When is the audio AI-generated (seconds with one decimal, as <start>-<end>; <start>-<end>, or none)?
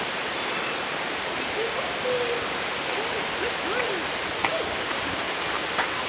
4.5-5.0